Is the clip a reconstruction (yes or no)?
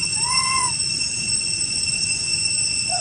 yes